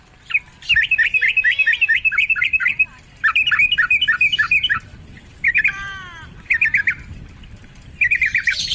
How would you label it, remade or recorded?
recorded